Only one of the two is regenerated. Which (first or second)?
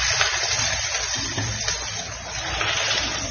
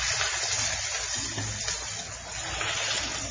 first